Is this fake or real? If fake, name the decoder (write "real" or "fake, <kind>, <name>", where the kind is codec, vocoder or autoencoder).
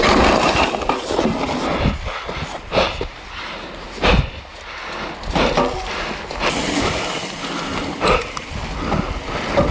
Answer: real